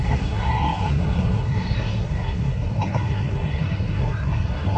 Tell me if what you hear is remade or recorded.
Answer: remade